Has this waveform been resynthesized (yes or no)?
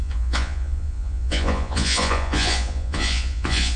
yes